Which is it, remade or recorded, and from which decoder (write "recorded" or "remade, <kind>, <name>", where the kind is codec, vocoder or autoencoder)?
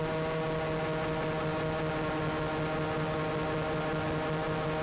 recorded